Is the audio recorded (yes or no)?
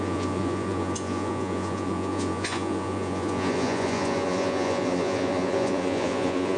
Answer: no